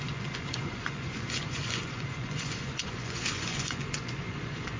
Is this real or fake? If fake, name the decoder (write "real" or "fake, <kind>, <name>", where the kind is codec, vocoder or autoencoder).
fake, vocoder, Vocos